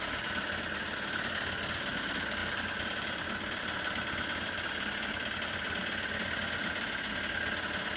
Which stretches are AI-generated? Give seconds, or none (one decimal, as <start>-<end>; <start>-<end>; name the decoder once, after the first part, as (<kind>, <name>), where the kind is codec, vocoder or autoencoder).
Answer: 2.4-7.2 (vocoder, BigVGAN v2)